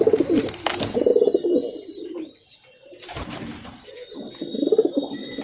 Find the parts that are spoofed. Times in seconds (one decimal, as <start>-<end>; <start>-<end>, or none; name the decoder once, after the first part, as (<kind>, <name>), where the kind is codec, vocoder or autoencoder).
none